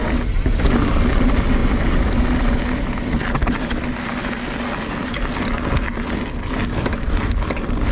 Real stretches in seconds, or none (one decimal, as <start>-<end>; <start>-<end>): 0.0-7.9